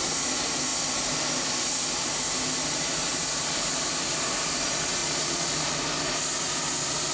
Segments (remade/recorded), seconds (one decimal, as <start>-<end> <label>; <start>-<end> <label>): 0.0-5.0 recorded; 5.0-5.5 remade; 5.5-7.1 recorded